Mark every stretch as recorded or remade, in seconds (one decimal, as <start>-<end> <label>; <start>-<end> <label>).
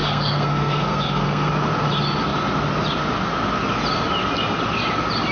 0.0-1.5 remade; 1.5-5.3 recorded